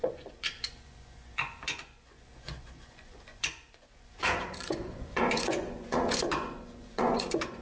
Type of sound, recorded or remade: remade